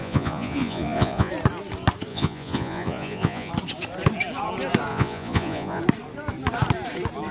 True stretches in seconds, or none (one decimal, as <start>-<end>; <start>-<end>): 1.3-2.1; 3.5-4.9; 5.8-7.3